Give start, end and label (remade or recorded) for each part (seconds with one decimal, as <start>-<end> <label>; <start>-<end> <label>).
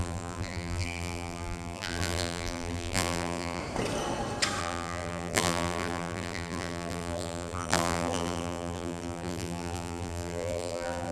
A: 0.0-3.6 remade; 3.6-4.6 recorded; 4.6-11.1 remade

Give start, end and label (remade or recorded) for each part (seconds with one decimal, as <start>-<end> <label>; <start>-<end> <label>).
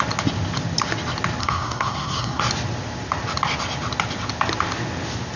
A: 0.0-1.4 recorded; 1.4-2.4 remade; 2.4-5.4 recorded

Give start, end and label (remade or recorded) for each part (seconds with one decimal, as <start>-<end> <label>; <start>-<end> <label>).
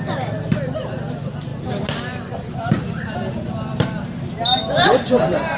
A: 0.0-5.6 recorded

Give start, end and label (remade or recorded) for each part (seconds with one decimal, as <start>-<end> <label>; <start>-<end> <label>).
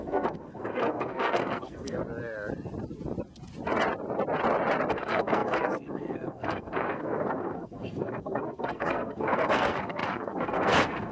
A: 0.0-2.0 remade; 2.0-4.9 recorded; 4.9-11.1 remade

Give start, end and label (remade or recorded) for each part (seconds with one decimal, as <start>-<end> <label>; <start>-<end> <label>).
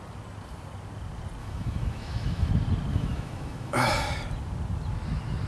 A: 0.0-1.4 recorded; 1.4-2.5 remade; 2.5-2.9 recorded; 2.9-3.9 remade; 3.9-5.5 recorded